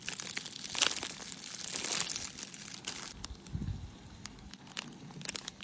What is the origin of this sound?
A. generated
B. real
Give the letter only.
B